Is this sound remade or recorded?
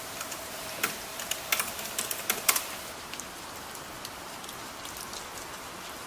recorded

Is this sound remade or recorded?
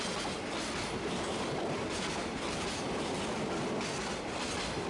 recorded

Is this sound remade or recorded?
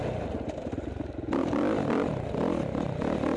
recorded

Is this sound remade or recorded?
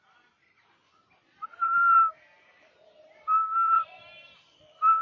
remade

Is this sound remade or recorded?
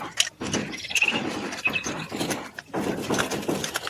remade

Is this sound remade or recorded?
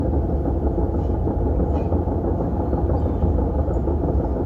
recorded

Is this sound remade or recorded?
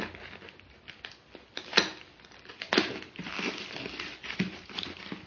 remade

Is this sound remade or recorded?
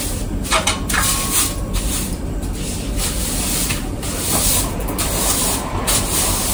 remade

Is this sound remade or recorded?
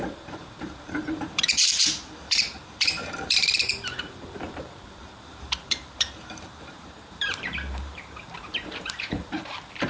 remade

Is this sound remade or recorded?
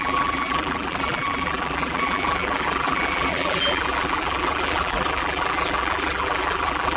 remade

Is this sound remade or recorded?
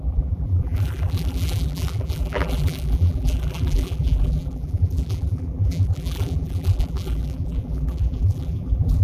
remade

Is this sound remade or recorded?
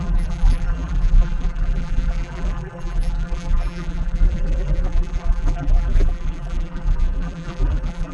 remade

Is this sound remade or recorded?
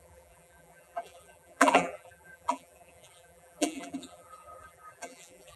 remade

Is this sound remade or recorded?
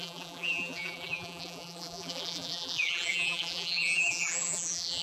remade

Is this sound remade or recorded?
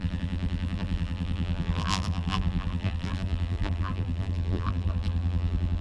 remade